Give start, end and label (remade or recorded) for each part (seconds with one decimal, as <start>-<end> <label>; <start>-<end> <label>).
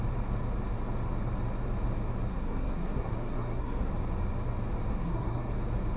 0.0-2.3 recorded; 2.3-3.9 remade; 3.9-4.9 recorded; 4.9-5.5 remade; 5.5-6.0 recorded